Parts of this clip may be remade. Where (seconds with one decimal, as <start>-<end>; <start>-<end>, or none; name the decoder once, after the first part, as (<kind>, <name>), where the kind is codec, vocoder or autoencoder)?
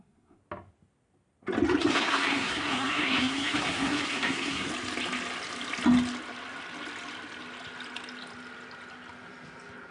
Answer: 0.0-0.4 (codec, SNAC); 1.8-4.7